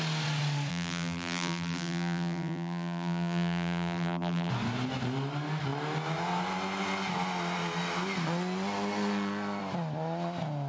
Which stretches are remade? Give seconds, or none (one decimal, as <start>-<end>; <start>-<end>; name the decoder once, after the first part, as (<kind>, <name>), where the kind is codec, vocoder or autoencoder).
0.7-4.5 (vocoder, BigVGAN v2)

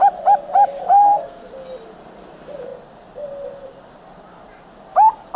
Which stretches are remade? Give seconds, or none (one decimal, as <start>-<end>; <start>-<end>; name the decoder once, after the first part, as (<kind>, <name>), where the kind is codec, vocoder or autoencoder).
0.9-1.5 (codec, SNAC)